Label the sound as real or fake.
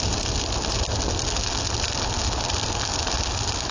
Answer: real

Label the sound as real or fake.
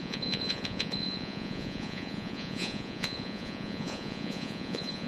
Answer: fake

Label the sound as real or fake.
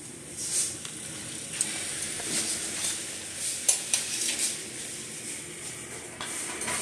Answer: real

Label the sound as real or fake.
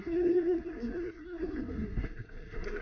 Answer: fake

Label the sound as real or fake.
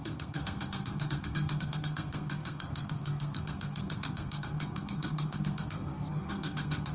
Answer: fake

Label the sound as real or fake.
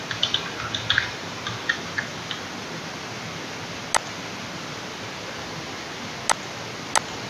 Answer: real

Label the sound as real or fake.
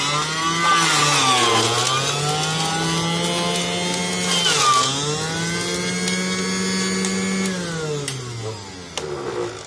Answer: real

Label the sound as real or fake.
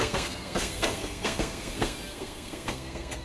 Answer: fake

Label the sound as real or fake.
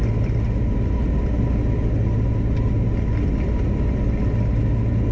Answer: real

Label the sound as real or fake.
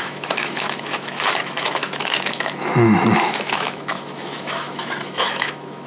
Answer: fake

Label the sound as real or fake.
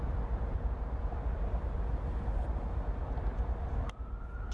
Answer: real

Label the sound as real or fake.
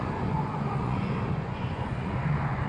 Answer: fake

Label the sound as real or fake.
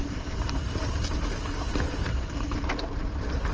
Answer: fake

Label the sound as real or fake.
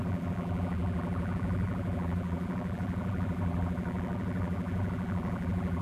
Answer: fake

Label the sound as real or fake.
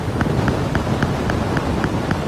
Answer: real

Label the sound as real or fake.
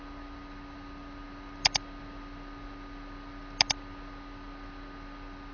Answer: real